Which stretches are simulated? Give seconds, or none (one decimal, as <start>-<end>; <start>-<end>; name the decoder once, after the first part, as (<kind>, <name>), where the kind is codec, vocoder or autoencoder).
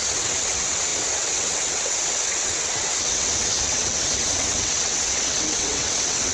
0.0-6.3 (vocoder, WaveNeXt)